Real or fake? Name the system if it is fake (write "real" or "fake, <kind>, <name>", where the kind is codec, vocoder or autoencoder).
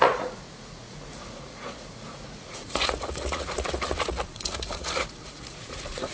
fake, vocoder, Vocos